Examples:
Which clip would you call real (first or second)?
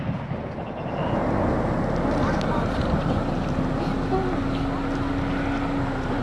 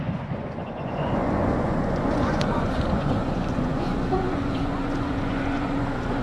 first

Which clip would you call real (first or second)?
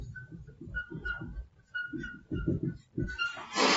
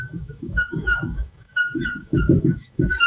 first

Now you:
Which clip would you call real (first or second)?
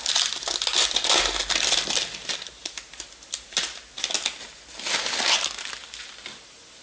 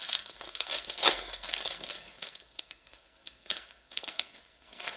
first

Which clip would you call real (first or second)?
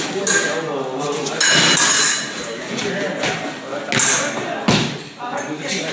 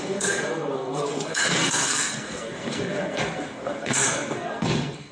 first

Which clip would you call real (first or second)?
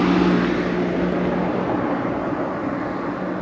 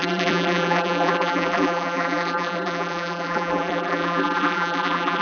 first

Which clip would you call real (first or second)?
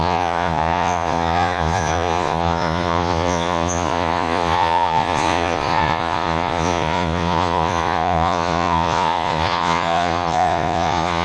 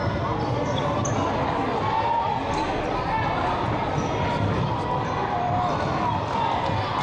second